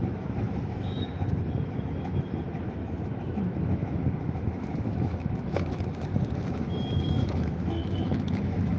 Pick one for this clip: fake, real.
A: fake